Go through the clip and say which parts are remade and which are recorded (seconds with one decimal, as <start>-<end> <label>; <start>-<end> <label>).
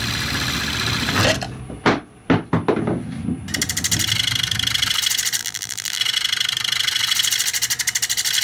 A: 0.0-5.4 recorded; 5.4-6.0 remade; 6.0-8.4 recorded